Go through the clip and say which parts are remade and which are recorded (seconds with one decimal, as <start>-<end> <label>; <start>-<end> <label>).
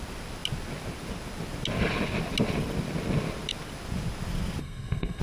0.0-4.6 recorded; 4.6-5.2 remade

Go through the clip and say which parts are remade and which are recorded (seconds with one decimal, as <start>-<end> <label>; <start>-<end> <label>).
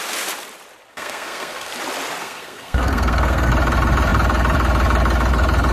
0.0-0.9 recorded; 0.9-1.7 remade; 1.7-2.2 recorded; 2.2-3.5 remade; 3.5-5.7 recorded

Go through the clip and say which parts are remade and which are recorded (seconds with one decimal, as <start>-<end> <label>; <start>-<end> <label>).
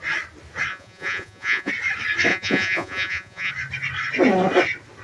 0.0-0.7 recorded; 0.7-1.7 remade; 1.7-2.3 recorded; 2.3-3.5 remade; 3.5-5.0 recorded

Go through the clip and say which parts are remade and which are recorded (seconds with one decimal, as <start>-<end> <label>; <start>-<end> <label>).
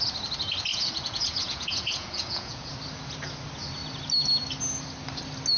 0.0-0.7 recorded; 0.7-2.7 remade; 2.7-5.6 recorded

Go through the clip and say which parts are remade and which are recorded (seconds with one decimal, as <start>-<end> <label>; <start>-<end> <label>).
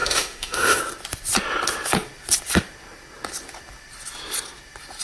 0.0-0.8 remade; 0.8-5.0 recorded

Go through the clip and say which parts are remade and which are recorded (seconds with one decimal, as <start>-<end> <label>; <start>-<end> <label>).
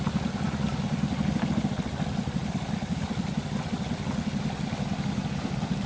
0.0-5.9 recorded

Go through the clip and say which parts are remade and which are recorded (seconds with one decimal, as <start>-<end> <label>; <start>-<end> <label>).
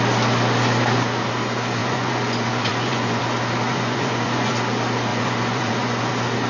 0.0-1.8 recorded; 1.8-3.2 remade; 3.2-3.7 recorded; 3.7-4.5 remade; 4.5-5.1 recorded; 5.1-6.1 remade; 6.1-6.5 recorded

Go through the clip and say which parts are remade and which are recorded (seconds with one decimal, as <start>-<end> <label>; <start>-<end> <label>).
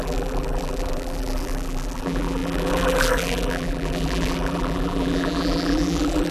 0.0-6.3 remade